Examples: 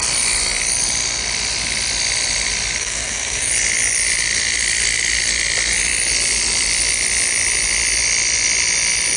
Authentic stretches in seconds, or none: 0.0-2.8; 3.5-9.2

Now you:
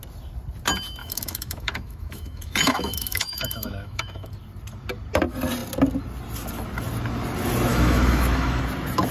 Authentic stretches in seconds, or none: 0.0-1.0; 4.3-7.7; 8.6-9.1

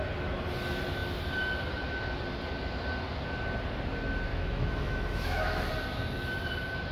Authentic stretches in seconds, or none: 0.0-4.3; 5.7-6.9

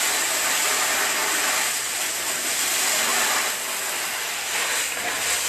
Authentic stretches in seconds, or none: 0.0-5.5

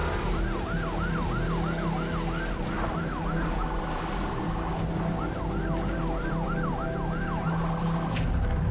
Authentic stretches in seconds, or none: 0.0-8.7